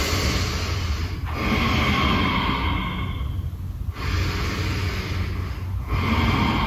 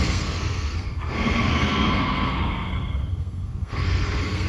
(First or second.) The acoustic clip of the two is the first